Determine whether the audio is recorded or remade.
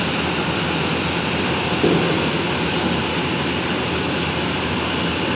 recorded